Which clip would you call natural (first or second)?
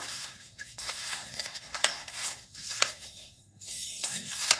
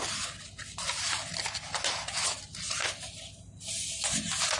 second